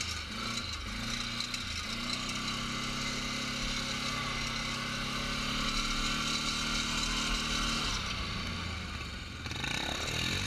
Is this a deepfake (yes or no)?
no